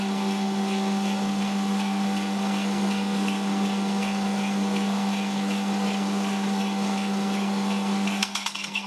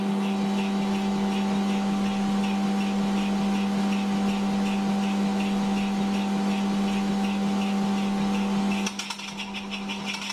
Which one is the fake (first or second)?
first